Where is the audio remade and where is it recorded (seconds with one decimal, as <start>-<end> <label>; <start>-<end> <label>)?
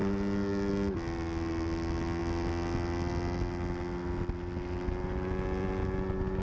0.0-6.4 recorded